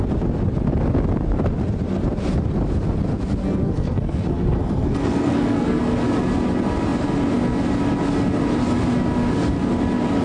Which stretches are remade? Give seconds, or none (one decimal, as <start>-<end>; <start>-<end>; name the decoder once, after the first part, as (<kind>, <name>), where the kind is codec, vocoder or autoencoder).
3.4-5.8 (codec, SNAC)